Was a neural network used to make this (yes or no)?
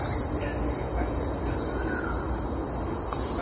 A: no